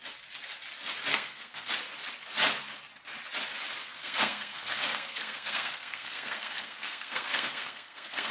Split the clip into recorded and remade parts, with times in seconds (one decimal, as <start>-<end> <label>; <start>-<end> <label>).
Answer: 0.0-1.1 recorded; 1.1-1.7 remade; 1.7-3.8 recorded; 3.8-8.3 remade